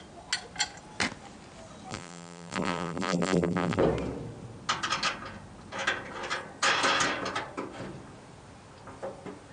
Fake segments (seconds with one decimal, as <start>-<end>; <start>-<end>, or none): 1.9-3.8